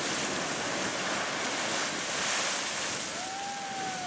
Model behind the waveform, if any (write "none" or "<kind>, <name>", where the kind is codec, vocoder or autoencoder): none